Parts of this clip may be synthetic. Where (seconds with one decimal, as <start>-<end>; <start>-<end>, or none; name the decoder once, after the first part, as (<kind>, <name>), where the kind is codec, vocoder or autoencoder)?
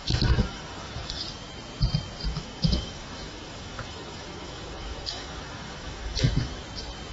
0.0-1.2 (autoencoder, DAC-VAE); 2.3-6.6